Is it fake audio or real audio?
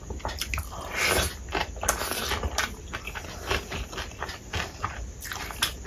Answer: real